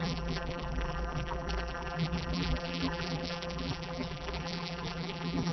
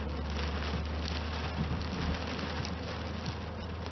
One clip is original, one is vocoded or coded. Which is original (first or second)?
second